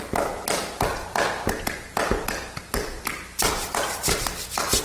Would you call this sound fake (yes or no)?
no